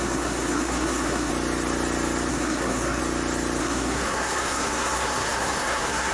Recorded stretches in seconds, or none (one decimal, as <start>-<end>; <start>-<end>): 1.3-2.3; 3.0-3.6